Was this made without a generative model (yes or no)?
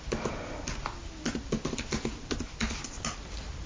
yes